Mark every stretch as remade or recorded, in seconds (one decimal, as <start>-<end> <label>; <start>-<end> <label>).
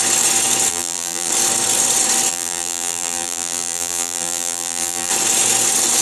0.0-0.7 recorded; 0.7-1.3 remade; 1.3-2.3 recorded; 2.3-5.1 remade; 5.1-6.0 recorded